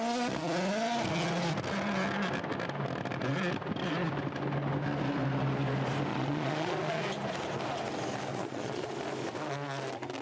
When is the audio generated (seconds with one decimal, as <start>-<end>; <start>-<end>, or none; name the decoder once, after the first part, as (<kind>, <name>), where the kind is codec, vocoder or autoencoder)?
6.1-7.0 (vocoder, Vocos); 8.3-8.9